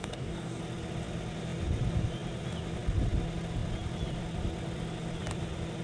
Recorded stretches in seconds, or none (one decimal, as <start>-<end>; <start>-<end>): 0.6-5.8